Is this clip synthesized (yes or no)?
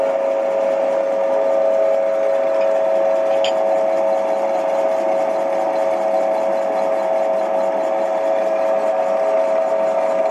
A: no